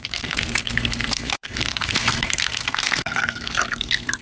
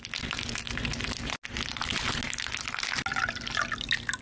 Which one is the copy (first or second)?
first